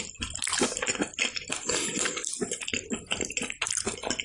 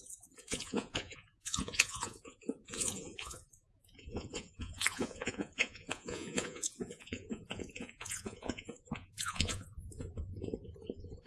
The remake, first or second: second